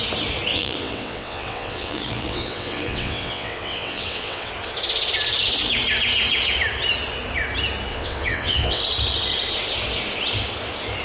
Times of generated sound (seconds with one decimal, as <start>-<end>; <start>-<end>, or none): 0.5-4.5; 7.9-8.8

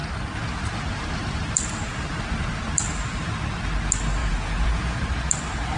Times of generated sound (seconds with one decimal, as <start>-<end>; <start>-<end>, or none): 4.2-5.0